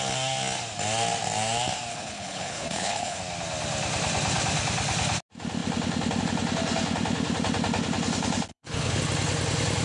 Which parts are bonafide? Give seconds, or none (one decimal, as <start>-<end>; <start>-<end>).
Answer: 0.0-1.9; 3.2-8.5; 9.0-9.8

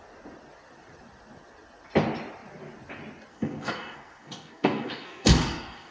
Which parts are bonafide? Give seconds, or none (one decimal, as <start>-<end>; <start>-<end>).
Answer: 0.0-3.3

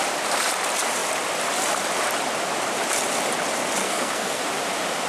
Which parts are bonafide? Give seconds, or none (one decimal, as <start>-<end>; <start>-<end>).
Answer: 0.0-3.8; 4.4-5.1

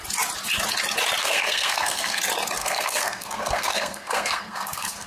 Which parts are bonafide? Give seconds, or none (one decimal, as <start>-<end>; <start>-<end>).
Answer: 0.0-1.2; 2.2-2.6

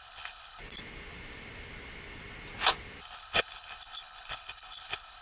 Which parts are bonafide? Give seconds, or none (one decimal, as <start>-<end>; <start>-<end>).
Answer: 0.6-3.0

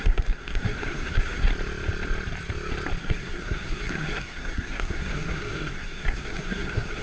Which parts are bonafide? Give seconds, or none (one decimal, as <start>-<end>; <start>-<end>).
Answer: 1.5-3.0